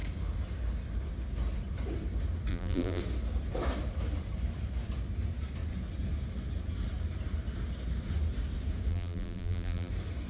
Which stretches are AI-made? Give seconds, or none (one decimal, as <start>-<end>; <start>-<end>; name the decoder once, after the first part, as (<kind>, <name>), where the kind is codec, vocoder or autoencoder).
2.5-3.0 (vocoder, BigVGAN v2); 8.9-9.9